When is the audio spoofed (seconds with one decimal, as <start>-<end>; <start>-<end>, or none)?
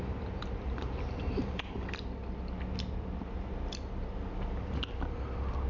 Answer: 0.6-1.8